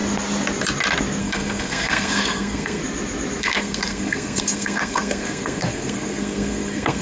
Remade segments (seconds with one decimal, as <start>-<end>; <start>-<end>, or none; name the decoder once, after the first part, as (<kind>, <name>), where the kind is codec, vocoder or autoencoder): 1.2-2.8 (codec, SNAC); 3.4-7.0